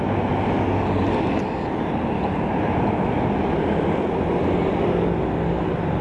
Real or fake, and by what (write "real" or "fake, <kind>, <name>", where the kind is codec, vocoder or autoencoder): real